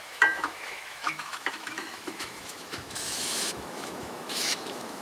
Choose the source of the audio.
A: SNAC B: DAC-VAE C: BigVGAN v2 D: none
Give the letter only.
B